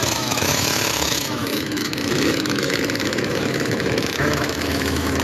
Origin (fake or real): fake